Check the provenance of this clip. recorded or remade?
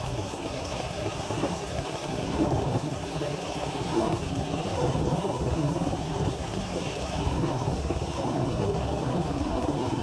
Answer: remade